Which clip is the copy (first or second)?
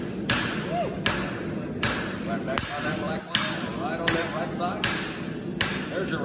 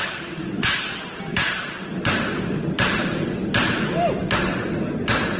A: second